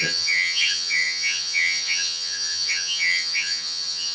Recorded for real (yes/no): no